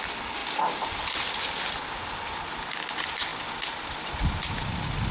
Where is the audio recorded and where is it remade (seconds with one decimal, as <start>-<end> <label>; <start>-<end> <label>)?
0.0-5.1 recorded

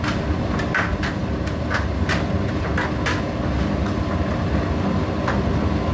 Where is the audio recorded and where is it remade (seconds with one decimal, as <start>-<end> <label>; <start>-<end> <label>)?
0.0-5.9 recorded